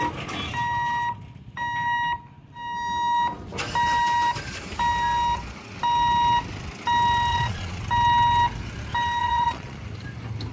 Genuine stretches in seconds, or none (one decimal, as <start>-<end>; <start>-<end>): 0.0-7.3; 7.8-9.2; 9.8-10.5